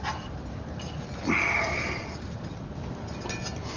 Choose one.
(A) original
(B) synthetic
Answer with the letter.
A